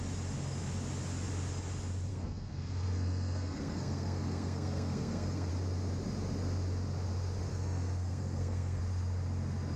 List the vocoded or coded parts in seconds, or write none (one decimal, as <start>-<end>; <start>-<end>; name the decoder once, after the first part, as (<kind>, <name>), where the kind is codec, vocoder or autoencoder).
2.1-5.5 (codec, SNAC); 7.5-8.8